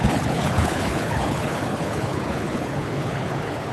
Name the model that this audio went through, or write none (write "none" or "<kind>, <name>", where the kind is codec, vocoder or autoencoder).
codec, HILCodec